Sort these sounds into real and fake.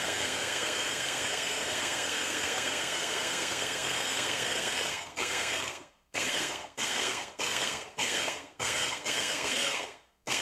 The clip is fake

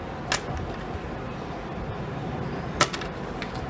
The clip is real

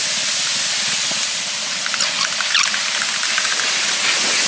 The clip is real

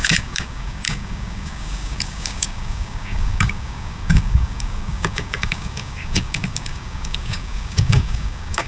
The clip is fake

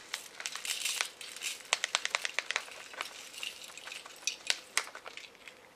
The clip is real